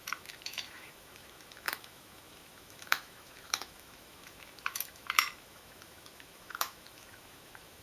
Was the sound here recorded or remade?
remade